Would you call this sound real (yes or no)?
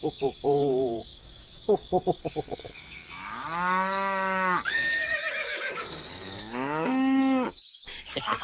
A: no